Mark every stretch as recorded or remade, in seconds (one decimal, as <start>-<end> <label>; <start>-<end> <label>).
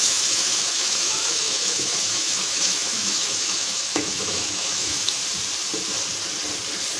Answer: 0.0-5.2 remade; 5.2-7.0 recorded